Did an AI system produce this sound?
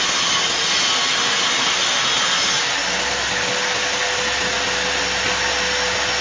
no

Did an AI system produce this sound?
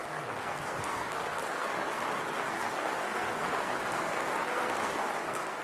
yes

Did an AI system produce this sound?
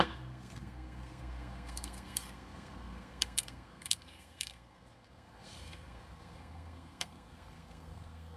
yes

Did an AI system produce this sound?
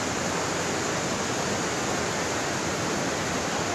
no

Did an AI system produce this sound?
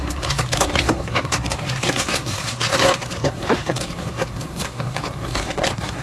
yes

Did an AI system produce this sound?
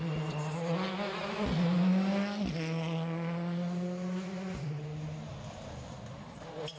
no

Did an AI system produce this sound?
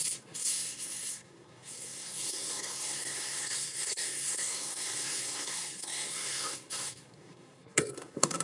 yes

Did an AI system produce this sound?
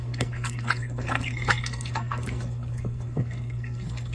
yes